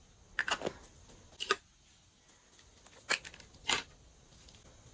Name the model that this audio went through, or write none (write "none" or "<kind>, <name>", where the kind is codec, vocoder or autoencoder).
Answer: none